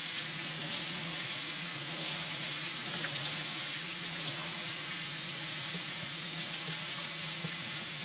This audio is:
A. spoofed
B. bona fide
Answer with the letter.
A